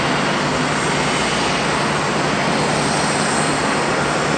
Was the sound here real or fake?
real